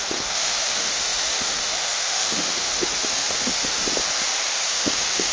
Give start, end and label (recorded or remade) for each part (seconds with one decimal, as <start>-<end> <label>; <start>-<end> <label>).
0.0-3.8 remade; 3.8-4.5 recorded; 4.5-5.3 remade